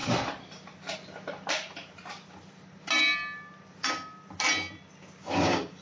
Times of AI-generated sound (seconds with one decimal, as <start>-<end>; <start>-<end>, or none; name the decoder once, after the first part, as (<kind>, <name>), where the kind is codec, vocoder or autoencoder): 5.2-5.8 (codec, DAC)